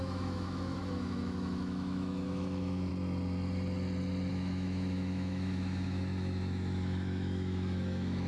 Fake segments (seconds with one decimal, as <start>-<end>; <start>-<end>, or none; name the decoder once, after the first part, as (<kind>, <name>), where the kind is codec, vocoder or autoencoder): 0.0-2.9 (autoencoder, DAC-VAE); 4.3-8.3